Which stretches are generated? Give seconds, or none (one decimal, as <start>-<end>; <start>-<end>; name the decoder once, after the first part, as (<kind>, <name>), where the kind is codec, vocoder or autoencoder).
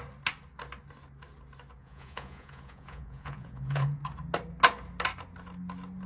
1.8-4.0 (vocoder, Vocos)